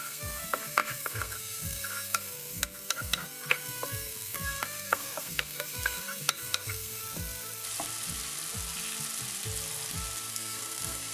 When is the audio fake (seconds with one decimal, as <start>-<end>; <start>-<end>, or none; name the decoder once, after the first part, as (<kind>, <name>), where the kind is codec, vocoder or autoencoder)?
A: 0.0-7.0 (codec, SNAC); 10.3-11.1